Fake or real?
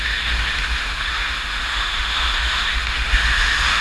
fake